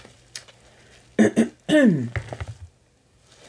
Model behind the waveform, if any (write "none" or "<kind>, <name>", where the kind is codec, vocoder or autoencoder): none